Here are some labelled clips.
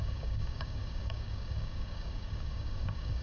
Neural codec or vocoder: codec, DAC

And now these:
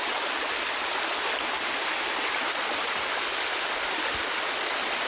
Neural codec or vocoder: none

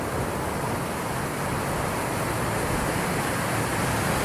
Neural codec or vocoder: none